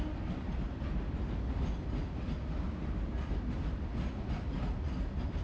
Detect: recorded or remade recorded